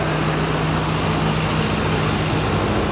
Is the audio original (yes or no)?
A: yes